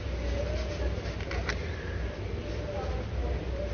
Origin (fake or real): real